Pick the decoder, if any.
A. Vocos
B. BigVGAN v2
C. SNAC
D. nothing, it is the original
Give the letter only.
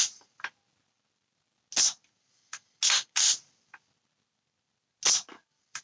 D